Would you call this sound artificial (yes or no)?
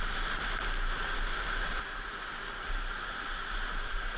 no